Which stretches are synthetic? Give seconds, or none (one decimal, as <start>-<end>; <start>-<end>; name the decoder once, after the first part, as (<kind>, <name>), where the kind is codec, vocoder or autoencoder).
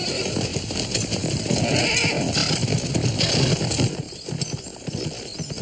none